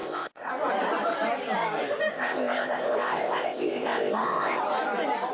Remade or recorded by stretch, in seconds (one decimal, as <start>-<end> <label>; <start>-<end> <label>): 0.0-0.5 remade; 0.5-2.1 recorded; 2.1-4.6 remade; 4.6-5.3 recorded